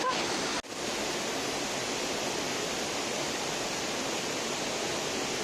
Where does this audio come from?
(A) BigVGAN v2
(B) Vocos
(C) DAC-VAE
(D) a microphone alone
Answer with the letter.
D